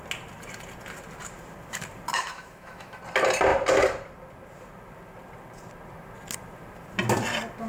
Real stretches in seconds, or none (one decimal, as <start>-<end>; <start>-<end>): 0.0-2.1; 3.0-7.7